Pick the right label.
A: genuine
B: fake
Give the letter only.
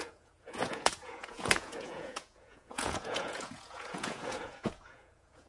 B